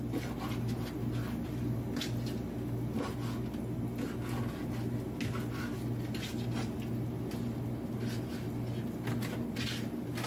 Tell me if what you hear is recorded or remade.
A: recorded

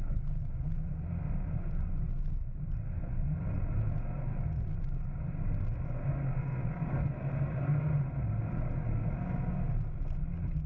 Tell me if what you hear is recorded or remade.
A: recorded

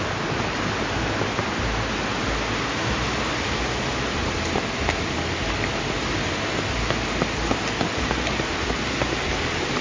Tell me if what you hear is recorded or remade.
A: recorded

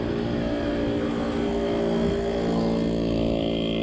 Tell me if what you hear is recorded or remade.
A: recorded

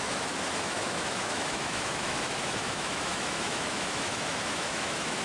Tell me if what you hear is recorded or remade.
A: remade